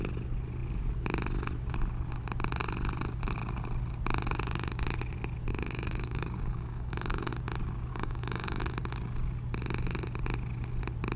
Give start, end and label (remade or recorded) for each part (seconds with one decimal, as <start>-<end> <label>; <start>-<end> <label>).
0.0-5.5 recorded; 5.5-7.3 remade; 7.3-7.9 recorded; 7.9-8.6 remade; 8.6-11.2 recorded